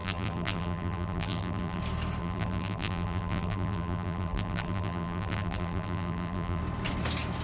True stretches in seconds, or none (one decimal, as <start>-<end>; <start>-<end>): 1.8-2.2; 6.6-7.4